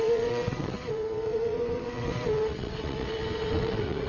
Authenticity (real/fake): fake